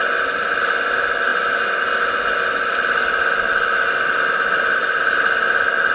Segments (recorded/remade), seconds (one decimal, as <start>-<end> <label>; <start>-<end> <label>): 0.0-5.9 recorded